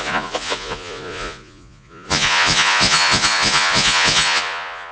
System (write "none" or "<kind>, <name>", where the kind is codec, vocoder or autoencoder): vocoder, Vocos